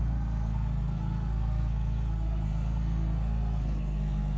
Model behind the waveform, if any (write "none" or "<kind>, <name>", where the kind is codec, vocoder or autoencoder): codec, SNAC